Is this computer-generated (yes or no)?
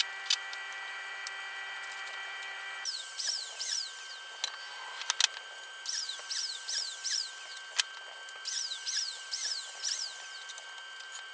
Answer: no